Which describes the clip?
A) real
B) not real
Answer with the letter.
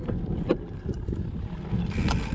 A